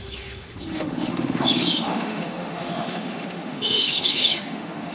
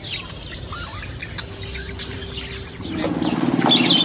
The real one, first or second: second